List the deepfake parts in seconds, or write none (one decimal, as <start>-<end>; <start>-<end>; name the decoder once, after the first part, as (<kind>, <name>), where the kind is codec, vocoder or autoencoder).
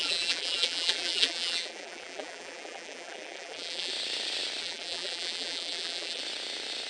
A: 0.0-3.9 (vocoder, BigVGAN v2); 4.6-6.2